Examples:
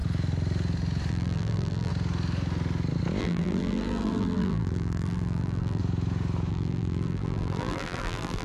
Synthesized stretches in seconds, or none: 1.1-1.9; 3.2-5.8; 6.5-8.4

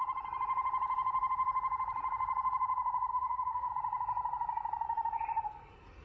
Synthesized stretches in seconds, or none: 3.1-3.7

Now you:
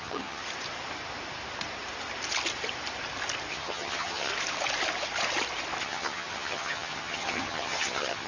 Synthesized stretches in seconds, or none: 0.0-0.4; 3.5-4.3; 5.8-8.3

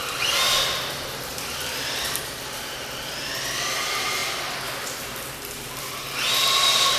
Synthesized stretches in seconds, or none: none